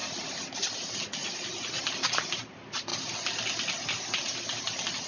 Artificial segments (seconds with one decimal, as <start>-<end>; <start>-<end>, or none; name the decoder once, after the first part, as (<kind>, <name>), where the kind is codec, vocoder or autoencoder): 1.2-1.8 (vocoder, Vocos)